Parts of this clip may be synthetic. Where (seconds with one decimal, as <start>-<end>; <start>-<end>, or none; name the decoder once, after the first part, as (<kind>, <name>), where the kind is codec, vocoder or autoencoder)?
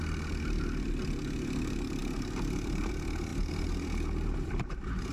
3.3-5.1 (vocoder, BigVGAN v2)